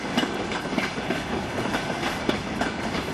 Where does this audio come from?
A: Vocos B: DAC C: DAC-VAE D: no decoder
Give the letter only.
B